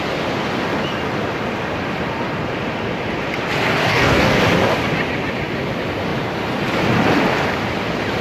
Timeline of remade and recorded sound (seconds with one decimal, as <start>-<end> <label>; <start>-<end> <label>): 0.0-3.8 recorded; 3.8-4.4 remade; 4.4-8.2 recorded